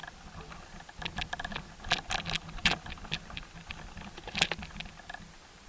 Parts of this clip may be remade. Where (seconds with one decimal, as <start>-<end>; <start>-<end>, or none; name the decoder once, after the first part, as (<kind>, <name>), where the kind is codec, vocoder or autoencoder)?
0.0-0.6 (vocoder, BigVGAN v2); 2.6-4.7